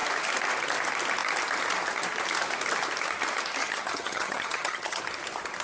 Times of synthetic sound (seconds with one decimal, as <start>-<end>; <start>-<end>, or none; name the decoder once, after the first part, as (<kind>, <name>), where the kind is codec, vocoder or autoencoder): 3.6-5.0 (vocoder, HiFi-GAN)